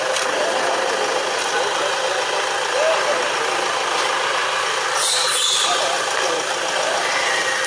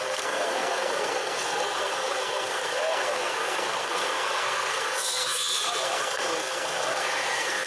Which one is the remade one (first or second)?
second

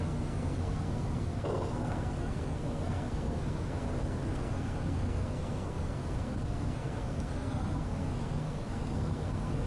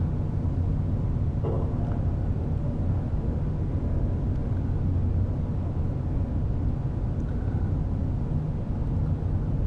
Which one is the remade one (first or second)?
first